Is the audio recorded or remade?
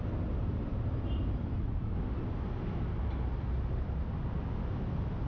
recorded